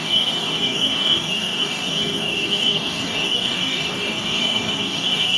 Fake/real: fake